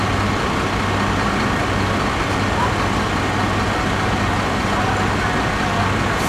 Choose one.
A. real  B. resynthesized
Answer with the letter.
A